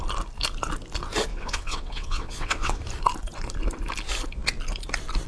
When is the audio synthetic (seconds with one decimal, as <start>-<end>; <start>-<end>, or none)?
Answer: 1.3-2.8